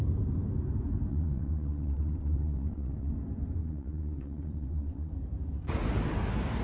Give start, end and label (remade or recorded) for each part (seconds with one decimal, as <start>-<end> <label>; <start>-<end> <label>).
0.0-1.1 recorded; 1.1-3.1 remade; 3.1-3.6 recorded; 3.6-5.1 remade; 5.1-6.6 recorded